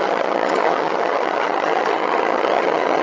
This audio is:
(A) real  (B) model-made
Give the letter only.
B